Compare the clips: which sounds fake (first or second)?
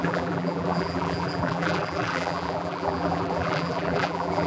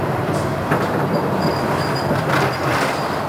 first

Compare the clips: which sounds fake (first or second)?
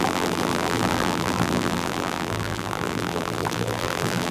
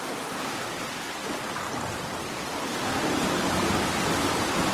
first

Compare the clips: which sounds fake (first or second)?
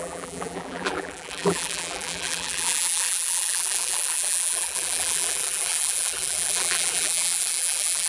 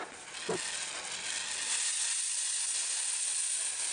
first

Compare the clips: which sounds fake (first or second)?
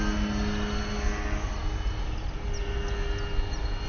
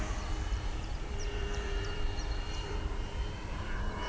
second